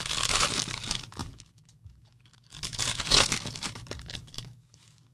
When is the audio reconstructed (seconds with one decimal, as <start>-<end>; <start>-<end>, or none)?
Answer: 0.0-5.1